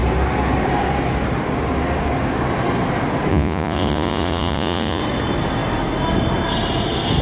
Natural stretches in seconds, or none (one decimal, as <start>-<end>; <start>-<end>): 0.0-3.3; 5.0-7.2